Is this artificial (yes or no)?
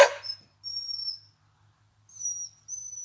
no